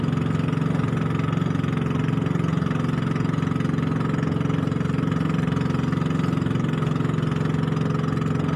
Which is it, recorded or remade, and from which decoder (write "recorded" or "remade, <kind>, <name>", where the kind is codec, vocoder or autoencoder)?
recorded